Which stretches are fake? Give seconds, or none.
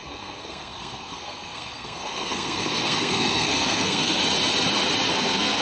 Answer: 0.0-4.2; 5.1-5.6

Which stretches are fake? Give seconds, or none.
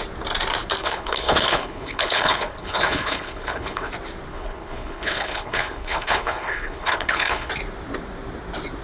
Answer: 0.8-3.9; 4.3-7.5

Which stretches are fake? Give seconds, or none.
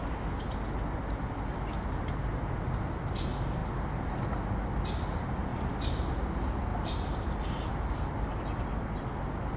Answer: 5.5-6.1